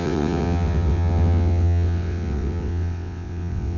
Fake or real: fake